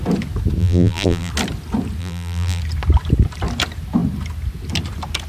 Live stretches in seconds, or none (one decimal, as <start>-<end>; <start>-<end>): 0.0-0.6; 1.3-2.0; 2.6-5.3